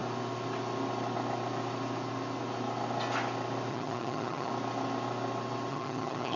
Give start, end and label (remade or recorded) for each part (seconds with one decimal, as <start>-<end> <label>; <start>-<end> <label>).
0.0-3.7 recorded; 3.7-4.5 remade; 4.5-5.7 recorded; 5.7-6.4 remade

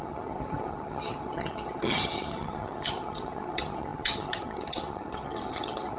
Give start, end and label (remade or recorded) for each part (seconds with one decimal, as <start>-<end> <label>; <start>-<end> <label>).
0.0-6.0 remade